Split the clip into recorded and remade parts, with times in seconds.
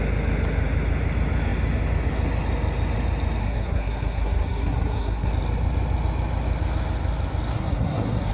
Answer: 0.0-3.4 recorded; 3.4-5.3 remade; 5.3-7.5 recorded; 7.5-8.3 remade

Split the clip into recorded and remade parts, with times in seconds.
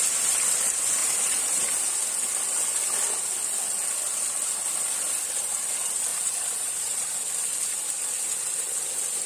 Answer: 0.0-1.0 recorded; 1.0-1.8 remade; 1.8-6.1 recorded; 6.1-7.3 remade; 7.3-9.3 recorded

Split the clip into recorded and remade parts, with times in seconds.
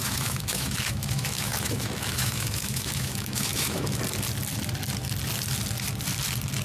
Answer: 0.0-4.0 remade; 4.0-6.6 recorded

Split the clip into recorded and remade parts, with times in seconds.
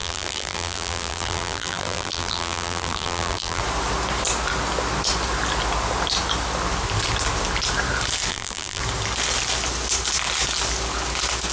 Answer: 0.0-3.6 remade; 3.6-8.3 recorded; 8.3-8.8 remade; 8.8-11.5 recorded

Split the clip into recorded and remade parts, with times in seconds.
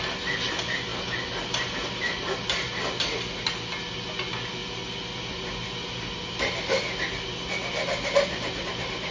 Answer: 0.0-9.1 recorded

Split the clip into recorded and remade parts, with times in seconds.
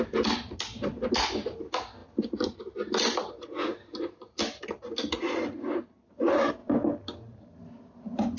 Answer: 0.0-8.4 recorded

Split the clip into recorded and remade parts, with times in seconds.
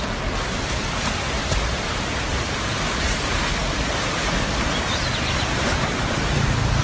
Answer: 0.0-1.4 recorded; 1.4-2.6 remade; 2.6-6.8 recorded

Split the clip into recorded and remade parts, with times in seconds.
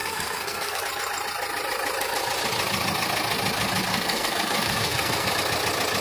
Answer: 0.0-0.8 remade; 0.8-3.9 recorded; 3.9-5.3 remade; 5.3-6.0 recorded